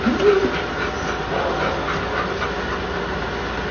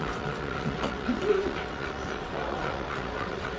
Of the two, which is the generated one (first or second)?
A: second